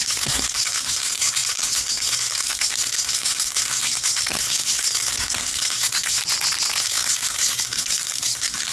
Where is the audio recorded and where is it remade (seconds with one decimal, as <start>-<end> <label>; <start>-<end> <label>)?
0.0-6.2 remade; 6.2-6.8 recorded; 6.8-8.7 remade